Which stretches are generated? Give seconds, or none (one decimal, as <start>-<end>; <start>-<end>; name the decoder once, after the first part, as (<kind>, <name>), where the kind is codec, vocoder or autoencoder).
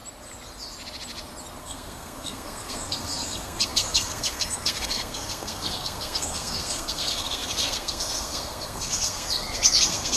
1.6-10.2 (codec, SNAC)